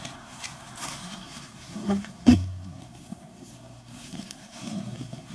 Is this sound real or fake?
fake